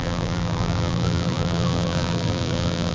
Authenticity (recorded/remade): remade